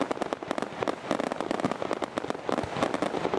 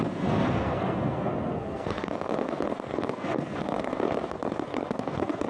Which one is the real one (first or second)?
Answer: first